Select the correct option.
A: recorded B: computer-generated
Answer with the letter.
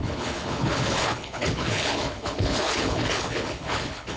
B